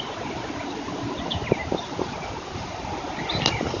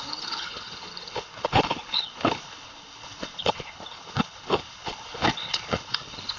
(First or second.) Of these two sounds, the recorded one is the first